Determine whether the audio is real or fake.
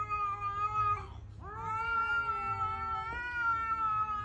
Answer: real